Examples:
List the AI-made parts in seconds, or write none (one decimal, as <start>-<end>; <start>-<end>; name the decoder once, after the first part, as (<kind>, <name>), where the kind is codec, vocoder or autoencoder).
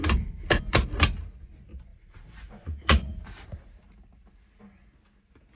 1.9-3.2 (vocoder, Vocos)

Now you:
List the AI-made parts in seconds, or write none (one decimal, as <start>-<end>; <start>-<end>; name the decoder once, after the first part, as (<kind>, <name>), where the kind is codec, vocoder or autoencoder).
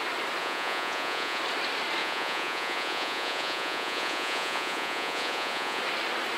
0.4-1.4 (vocoder, Vocos); 2.0-5.8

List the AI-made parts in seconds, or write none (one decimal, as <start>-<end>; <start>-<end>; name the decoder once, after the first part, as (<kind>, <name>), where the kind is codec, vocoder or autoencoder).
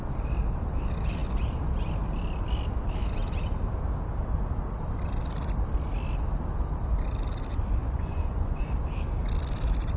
7.8-8.6 (vocoder, Vocos)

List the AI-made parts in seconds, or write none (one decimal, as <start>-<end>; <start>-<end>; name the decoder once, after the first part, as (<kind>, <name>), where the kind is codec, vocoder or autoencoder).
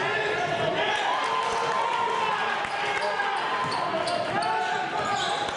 none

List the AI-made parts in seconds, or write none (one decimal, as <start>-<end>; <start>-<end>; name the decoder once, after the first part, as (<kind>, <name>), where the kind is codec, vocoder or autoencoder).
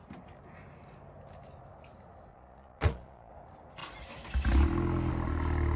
2.3-3.3 (vocoder, Vocos)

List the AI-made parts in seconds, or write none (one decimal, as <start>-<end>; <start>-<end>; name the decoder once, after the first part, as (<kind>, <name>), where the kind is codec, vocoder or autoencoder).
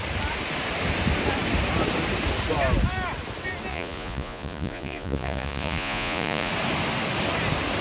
3.7-6.5 (vocoder, Vocos)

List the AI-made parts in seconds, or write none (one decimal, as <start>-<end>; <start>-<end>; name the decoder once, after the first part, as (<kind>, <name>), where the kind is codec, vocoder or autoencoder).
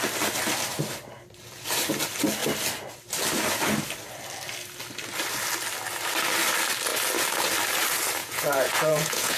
8.2-9.4 (vocoder, Vocos)